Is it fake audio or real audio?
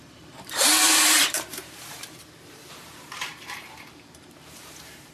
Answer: fake